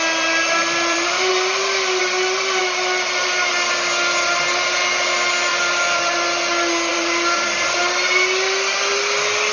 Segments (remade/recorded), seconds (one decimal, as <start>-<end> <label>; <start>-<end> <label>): 0.0-0.6 recorded; 0.6-1.3 remade; 1.3-5.5 recorded; 5.5-6.1 remade; 6.1-6.9 recorded; 6.9-7.8 remade; 7.8-9.5 recorded